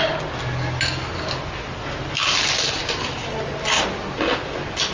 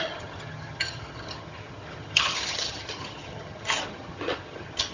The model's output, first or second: second